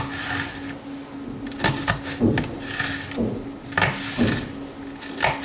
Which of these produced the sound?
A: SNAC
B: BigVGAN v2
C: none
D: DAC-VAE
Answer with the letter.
C